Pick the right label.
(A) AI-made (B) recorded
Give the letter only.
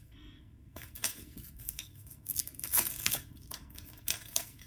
A